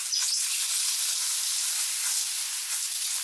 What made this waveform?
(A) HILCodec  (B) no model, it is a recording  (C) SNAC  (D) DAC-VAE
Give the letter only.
B